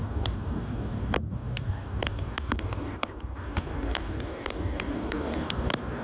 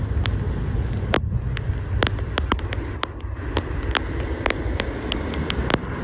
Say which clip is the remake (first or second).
first